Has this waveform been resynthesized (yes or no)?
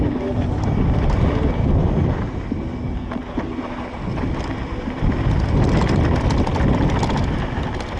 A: no